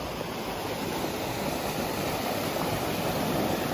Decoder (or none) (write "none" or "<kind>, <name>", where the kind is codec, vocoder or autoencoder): none